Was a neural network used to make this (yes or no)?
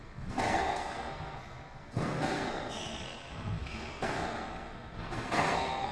yes